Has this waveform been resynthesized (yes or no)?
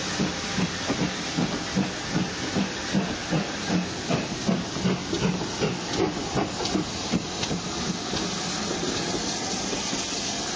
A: no